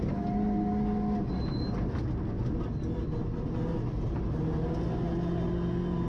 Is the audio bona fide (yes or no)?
yes